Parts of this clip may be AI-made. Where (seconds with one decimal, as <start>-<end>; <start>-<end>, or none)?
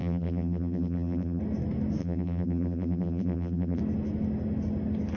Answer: 0.0-1.4; 2.0-3.8